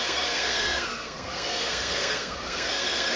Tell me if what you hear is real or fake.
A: fake